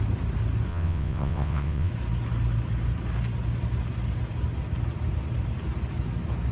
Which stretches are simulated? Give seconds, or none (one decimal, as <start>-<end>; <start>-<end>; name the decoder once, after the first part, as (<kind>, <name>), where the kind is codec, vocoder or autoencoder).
0.7-1.9 (vocoder, WaveNeXt)